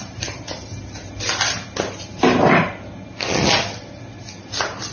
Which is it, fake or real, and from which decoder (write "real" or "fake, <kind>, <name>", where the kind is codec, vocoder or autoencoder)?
real